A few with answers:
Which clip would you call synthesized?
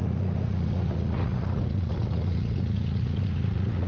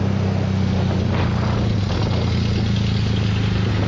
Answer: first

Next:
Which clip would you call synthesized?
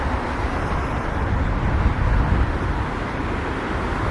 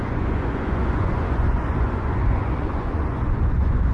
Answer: second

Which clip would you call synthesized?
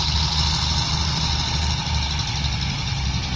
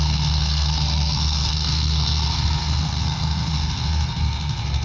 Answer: second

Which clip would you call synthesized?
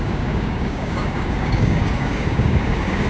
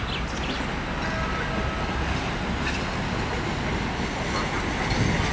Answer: first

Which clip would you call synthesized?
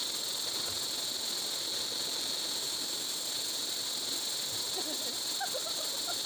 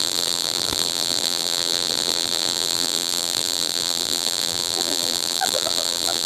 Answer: second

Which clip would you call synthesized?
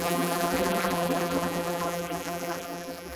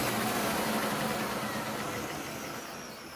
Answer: first